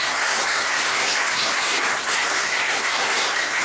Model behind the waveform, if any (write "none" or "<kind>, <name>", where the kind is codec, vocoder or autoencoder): codec, SNAC